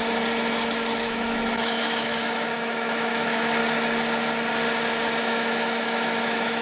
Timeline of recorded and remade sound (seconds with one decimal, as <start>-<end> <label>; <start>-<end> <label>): 0.0-0.9 recorded; 0.9-3.6 remade; 3.6-5.2 recorded; 5.2-6.6 remade